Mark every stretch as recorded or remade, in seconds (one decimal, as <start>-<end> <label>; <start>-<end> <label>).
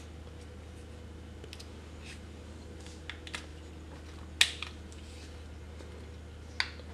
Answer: 0.0-6.9 recorded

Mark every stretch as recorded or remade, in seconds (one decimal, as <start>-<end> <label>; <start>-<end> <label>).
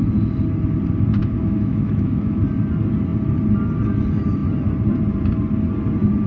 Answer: 0.0-1.2 recorded; 1.2-2.4 remade; 2.4-6.3 recorded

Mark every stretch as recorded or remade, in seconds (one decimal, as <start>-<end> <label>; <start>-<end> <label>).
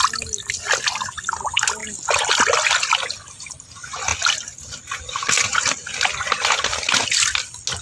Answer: 0.0-7.8 recorded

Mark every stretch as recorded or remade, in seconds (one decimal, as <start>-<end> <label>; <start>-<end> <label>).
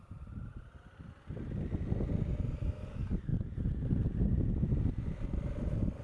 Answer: 0.0-6.0 recorded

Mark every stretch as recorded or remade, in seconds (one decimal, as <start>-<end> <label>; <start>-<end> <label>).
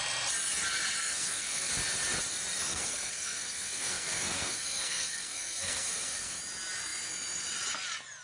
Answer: 0.0-1.0 recorded; 1.0-1.7 remade; 1.7-2.7 recorded; 2.7-6.4 remade; 6.4-8.2 recorded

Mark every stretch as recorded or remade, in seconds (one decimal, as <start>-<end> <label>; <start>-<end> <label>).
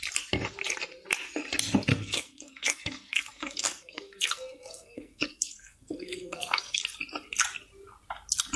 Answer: 0.0-1.9 recorded; 1.9-6.8 remade; 6.8-8.6 recorded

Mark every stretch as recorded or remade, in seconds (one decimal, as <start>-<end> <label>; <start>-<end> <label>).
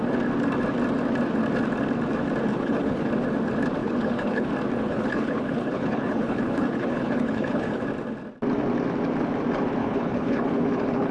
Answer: 0.0-2.5 recorded; 2.5-3.1 remade; 3.1-3.8 recorded; 3.8-4.5 remade; 4.5-4.9 recorded; 4.9-7.8 remade; 7.8-9.8 recorded; 9.8-11.1 remade